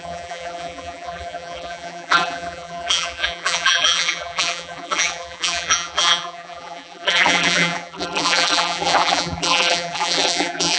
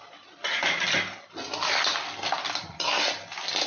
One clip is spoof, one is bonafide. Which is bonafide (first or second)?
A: second